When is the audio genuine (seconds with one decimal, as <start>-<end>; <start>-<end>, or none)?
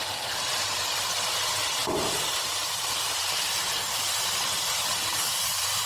0.0-5.9